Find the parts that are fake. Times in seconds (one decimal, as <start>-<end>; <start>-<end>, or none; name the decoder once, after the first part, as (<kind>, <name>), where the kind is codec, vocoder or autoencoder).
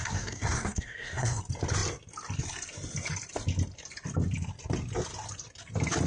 0.0-1.4 (codec, SNAC)